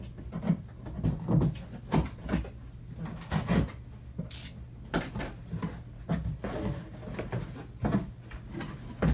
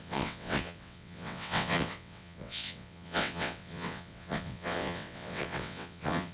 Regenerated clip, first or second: second